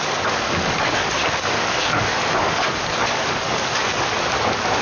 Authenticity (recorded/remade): remade